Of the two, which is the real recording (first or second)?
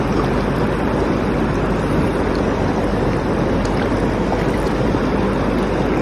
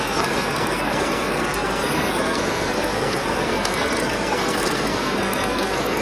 first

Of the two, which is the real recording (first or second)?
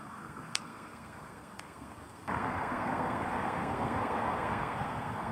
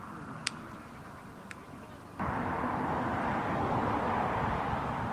second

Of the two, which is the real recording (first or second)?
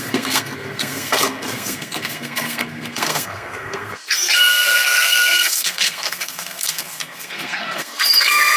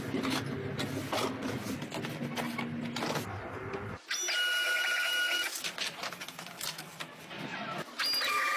second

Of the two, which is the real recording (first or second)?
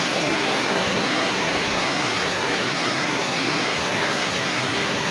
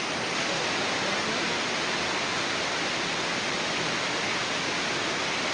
second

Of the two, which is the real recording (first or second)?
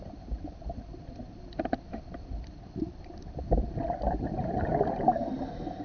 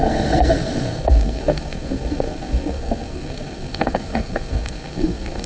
first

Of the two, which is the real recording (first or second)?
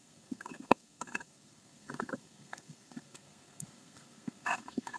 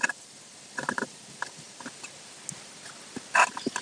second